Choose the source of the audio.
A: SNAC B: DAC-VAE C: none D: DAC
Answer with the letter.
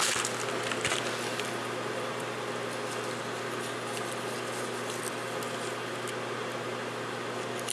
C